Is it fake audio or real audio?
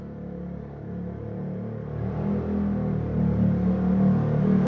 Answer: real